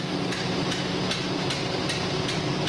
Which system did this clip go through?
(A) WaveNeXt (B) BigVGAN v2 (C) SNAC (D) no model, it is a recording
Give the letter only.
D